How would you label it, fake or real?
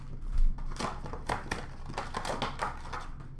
real